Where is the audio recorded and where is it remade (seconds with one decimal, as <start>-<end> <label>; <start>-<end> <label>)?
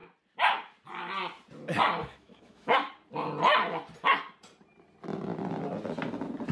0.0-2.0 recorded; 2.0-2.9 remade; 2.9-6.5 recorded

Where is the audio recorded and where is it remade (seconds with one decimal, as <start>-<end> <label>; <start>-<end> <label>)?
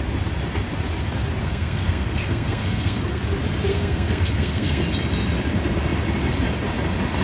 0.0-1.4 recorded; 1.4-3.2 remade; 3.2-3.7 recorded; 3.7-4.8 remade; 4.8-7.2 recorded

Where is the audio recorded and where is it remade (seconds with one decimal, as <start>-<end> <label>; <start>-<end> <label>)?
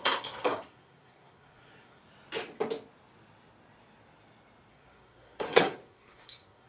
0.0-2.0 remade; 2.0-4.7 recorded; 4.7-6.7 remade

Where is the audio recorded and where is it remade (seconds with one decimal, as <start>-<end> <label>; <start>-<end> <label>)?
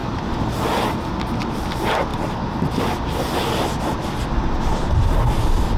0.0-5.8 recorded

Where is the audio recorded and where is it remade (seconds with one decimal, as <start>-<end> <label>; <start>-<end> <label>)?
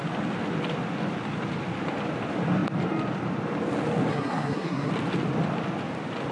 0.0-4.1 recorded; 4.1-4.9 remade; 4.9-6.3 recorded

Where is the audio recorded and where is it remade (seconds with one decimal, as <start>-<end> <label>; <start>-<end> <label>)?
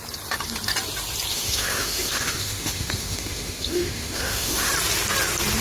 0.0-1.3 recorded; 1.3-4.7 remade; 4.7-5.6 recorded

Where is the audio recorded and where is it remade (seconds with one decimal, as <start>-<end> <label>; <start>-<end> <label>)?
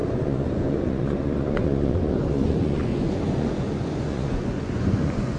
0.0-5.4 remade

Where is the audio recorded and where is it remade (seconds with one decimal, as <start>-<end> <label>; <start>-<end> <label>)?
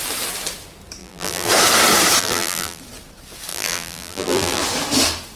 0.0-1.0 recorded; 1.0-1.5 remade; 1.5-2.2 recorded; 2.2-2.8 remade; 2.8-3.5 recorded; 3.5-4.6 remade; 4.6-5.4 recorded